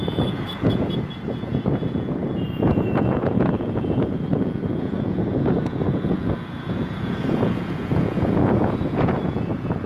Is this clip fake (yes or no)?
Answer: yes